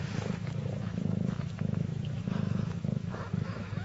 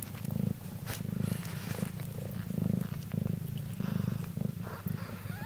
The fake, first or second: first